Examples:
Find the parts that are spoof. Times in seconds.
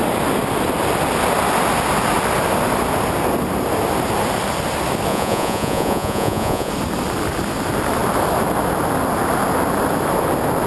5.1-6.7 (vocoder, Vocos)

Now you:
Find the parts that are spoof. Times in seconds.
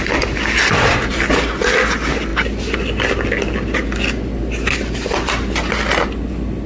none